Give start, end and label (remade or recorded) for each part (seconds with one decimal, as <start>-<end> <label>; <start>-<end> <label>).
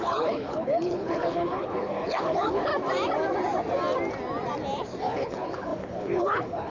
0.0-2.7 remade; 2.7-5.0 recorded; 5.0-6.7 remade